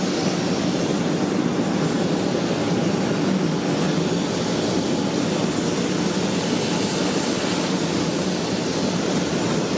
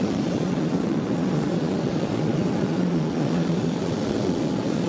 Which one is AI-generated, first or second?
second